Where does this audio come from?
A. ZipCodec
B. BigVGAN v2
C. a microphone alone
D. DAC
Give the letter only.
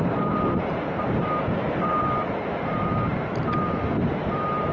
B